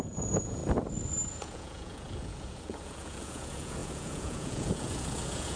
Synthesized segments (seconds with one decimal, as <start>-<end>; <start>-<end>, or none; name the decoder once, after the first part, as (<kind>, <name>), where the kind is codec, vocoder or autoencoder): 0.0-0.6 (vocoder, Vocos); 1.3-5.6